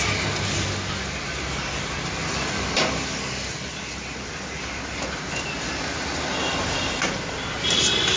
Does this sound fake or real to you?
real